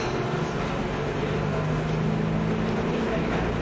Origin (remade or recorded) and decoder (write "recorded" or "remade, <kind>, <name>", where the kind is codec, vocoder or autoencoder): recorded